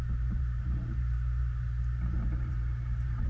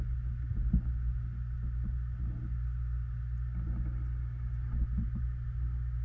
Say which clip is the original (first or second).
second